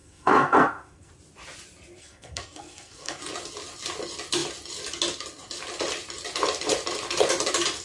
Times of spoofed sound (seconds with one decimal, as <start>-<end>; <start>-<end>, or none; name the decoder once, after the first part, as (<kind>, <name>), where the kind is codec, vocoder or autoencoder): 0.0-1.1 (codec, SNAC); 2.0-3.2